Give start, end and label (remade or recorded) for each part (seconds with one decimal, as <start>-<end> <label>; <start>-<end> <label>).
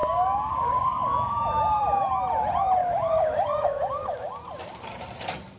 0.0-1.8 remade; 1.8-2.8 recorded; 2.8-4.3 remade; 4.3-5.6 recorded